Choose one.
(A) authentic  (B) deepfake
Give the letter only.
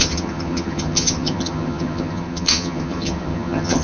B